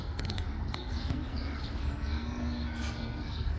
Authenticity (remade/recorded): remade